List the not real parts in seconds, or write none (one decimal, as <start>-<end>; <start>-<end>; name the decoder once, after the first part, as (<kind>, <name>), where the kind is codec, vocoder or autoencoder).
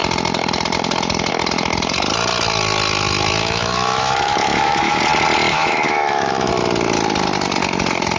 3.4-5.0 (autoencoder, DAC-VAE); 5.5-6.5